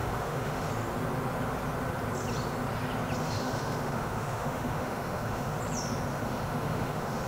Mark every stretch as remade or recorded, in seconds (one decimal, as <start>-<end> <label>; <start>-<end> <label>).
0.0-0.7 remade; 0.7-3.2 recorded; 3.2-5.6 remade; 5.6-6.1 recorded; 6.1-7.3 remade